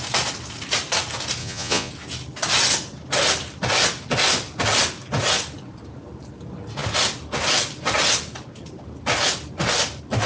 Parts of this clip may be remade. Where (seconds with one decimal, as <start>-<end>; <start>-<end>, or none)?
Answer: 1.4-1.9